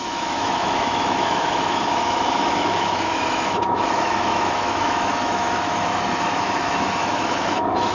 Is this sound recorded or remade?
remade